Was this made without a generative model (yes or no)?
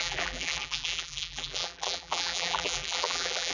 no